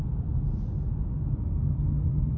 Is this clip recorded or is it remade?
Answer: recorded